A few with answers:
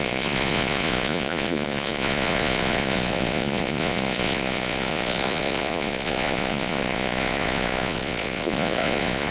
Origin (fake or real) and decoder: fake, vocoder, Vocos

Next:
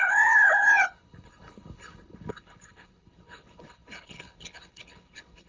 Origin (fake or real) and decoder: fake, codec, HILCodec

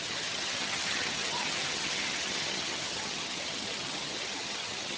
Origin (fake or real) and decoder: fake, vocoder, HiFi-GAN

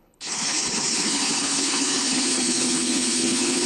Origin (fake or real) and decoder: fake, codec, HILCodec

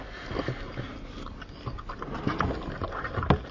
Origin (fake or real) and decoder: real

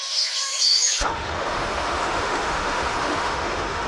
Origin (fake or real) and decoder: fake, autoencoder, DAC-VAE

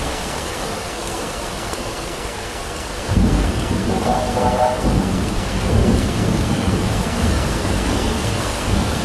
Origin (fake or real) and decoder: fake, codec, SNAC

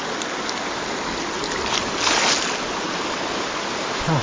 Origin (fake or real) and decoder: real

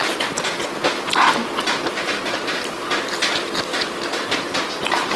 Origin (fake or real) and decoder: real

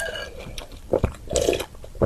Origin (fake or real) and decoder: real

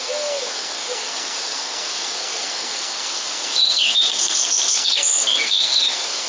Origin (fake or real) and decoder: fake, codec, SNAC